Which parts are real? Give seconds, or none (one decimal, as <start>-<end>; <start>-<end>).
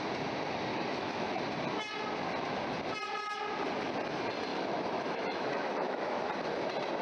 0.0-0.7; 1.4-4.5; 6.2-7.0